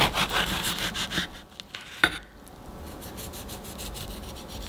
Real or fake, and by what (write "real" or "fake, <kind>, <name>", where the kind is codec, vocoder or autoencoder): real